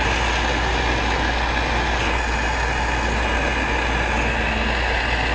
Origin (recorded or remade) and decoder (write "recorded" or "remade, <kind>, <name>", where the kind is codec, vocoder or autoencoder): recorded